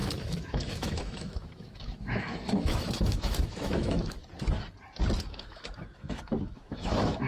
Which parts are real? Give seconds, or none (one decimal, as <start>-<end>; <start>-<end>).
4.2-5.2